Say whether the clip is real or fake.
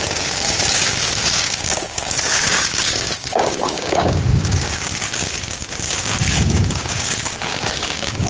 fake